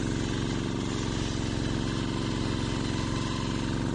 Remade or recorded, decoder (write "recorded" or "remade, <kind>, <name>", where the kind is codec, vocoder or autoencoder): recorded